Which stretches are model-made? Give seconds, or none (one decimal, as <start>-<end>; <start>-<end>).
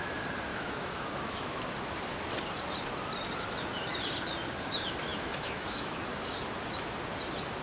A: 0.5-1.6; 5.1-6.0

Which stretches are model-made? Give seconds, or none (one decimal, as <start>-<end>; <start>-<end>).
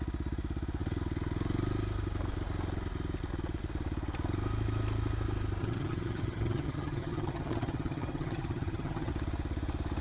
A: 5.6-9.1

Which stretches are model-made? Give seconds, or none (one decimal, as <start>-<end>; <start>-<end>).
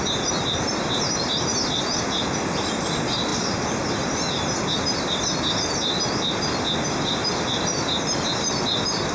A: none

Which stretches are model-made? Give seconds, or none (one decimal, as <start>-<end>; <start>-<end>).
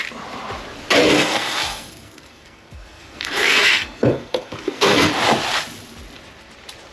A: 1.0-5.1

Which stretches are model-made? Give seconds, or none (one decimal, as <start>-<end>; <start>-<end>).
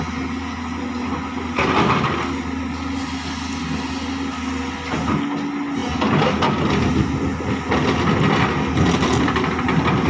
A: none